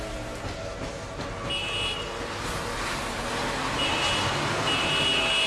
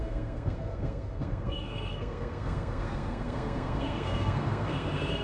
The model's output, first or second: second